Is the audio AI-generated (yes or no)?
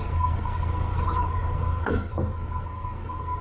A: yes